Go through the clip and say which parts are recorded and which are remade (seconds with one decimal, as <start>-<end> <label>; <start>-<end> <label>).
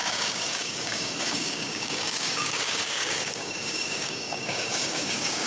0.0-5.5 remade